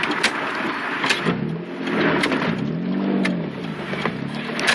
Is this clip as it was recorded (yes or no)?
yes